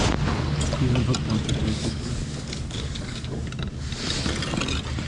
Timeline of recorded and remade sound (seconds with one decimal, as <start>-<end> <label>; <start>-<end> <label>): 0.0-1.6 recorded; 1.6-3.5 remade; 3.5-5.1 recorded